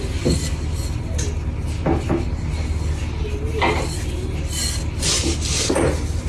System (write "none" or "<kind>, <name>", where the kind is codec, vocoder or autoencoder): none